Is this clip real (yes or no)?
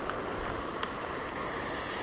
no